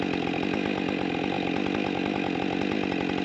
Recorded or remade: recorded